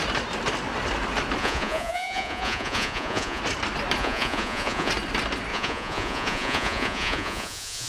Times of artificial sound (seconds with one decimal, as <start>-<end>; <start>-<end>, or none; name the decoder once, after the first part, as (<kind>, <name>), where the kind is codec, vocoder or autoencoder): 1.4-3.4 (vocoder, Vocos); 4.0-4.9; 5.5-7.9